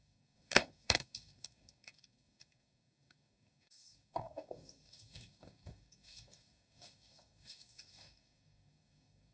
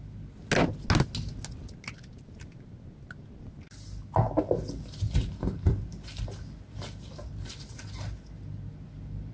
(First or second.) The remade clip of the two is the first